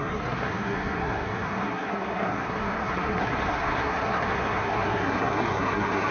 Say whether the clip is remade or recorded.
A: remade